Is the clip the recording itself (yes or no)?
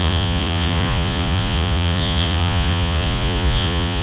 no